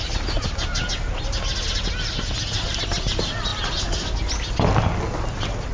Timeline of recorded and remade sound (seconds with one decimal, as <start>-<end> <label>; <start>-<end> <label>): 0.0-5.7 recorded